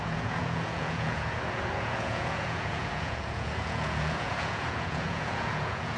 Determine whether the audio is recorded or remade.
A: remade